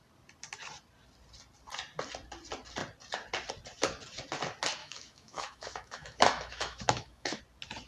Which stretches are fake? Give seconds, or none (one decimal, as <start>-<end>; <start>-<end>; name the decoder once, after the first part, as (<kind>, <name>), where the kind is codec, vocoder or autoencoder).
4.8-7.4 (autoencoder, DAC-VAE)